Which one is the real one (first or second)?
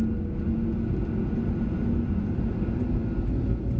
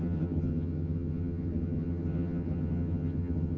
first